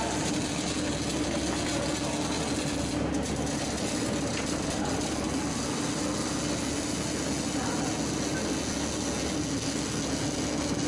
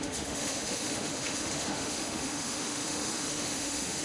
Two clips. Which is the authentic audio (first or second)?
first